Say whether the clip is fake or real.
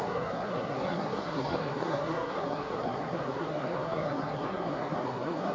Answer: fake